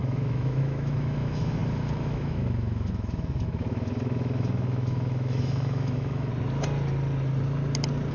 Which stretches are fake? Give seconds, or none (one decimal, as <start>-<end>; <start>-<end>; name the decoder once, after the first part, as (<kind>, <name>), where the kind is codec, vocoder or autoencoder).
0.0-6.3 (autoencoder, DAC-VAE)